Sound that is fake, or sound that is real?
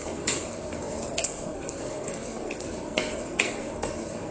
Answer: fake